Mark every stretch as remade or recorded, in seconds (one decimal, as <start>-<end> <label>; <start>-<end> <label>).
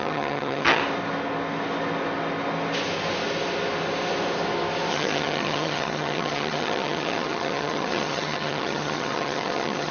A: 0.0-0.8 remade; 0.8-4.9 recorded; 4.9-9.9 remade